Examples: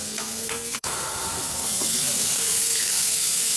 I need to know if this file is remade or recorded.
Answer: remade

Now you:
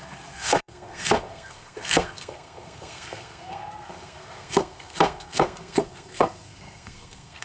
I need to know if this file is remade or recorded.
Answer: remade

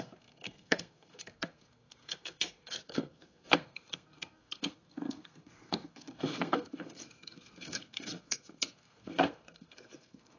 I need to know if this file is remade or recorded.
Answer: remade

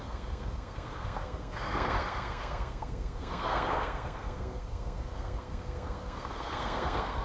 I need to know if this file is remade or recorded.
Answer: remade